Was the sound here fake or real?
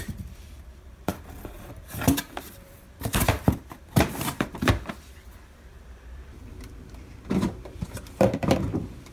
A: fake